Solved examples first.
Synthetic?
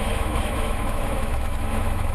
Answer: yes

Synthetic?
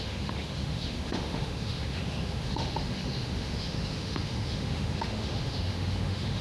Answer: yes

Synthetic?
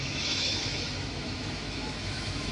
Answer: yes